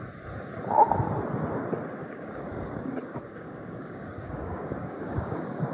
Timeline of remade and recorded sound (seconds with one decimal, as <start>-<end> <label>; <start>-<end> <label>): 0.0-2.0 recorded; 2.0-5.7 remade